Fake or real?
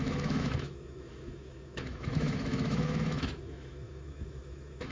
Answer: fake